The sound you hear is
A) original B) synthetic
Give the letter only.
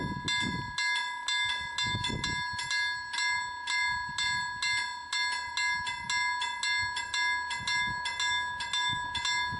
A